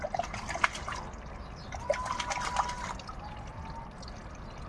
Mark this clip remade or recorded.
recorded